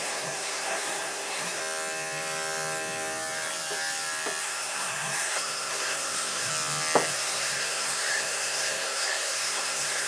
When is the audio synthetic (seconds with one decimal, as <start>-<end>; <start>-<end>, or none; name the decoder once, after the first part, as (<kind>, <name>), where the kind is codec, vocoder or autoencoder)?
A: 0.0-1.6 (codec, SNAC); 4.4-6.5; 7.1-10.1